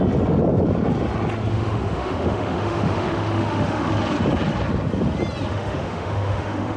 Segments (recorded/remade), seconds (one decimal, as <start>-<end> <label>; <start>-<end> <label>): 0.0-1.5 recorded; 1.5-3.9 remade; 3.9-5.5 recorded; 5.5-6.8 remade